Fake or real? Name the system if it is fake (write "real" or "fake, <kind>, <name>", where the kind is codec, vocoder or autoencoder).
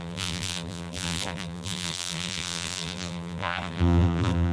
fake, vocoder, BigVGAN v2